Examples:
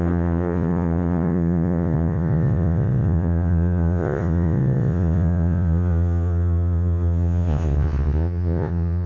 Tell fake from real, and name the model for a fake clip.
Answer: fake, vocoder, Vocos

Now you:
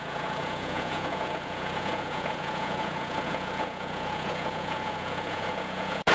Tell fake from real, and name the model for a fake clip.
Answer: fake, vocoder, Vocos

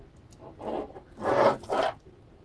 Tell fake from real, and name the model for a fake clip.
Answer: real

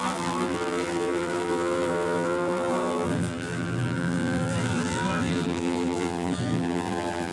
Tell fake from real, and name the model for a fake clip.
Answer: fake, vocoder, BigVGAN v2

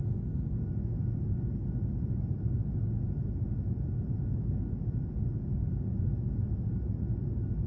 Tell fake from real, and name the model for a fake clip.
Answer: real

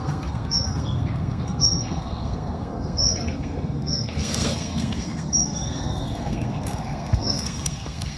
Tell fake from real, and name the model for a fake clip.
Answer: fake, codec, SNAC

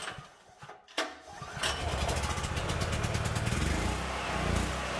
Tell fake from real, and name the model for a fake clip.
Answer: real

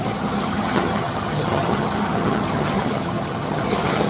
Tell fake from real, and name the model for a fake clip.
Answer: fake, vocoder, HiFi-GAN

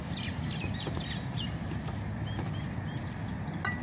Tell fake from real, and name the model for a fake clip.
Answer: real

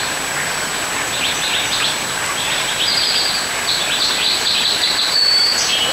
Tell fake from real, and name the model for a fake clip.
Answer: real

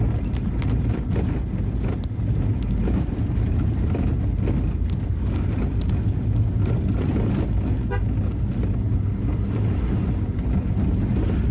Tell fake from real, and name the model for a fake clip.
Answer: real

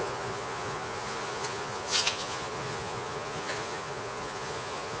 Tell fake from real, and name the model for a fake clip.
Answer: fake, vocoder, Vocos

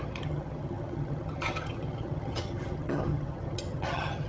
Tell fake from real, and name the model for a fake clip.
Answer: fake, vocoder, HiFi-GAN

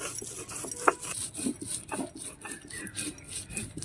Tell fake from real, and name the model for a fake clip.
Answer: real